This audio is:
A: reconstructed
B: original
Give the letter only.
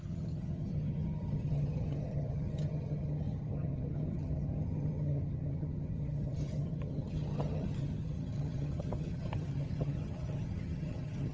A